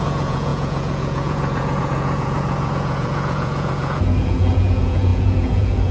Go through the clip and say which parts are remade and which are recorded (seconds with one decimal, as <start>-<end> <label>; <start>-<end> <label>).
0.0-5.9 remade